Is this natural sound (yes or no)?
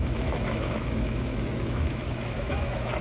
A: no